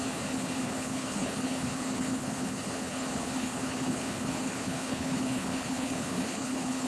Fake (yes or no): yes